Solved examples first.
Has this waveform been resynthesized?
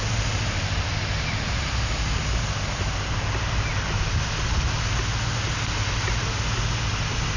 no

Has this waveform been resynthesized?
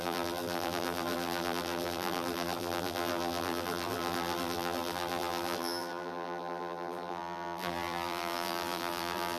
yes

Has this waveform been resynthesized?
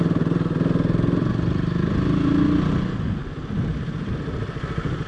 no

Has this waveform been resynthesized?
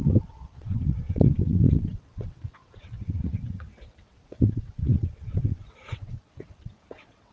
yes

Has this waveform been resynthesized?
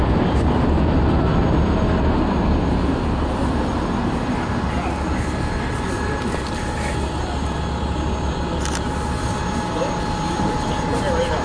no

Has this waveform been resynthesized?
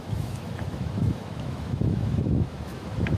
yes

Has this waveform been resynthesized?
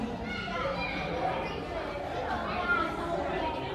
no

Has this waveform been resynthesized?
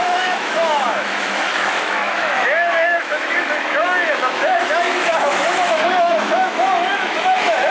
yes